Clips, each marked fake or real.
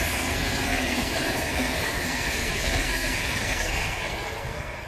fake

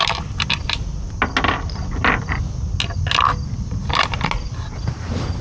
real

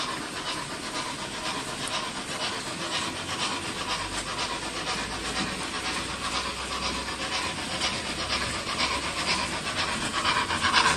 real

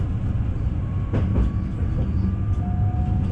real